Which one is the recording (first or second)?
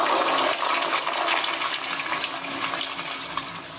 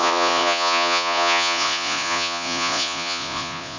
first